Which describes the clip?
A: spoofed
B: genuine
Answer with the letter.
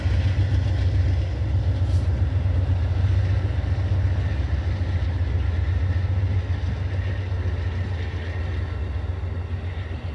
B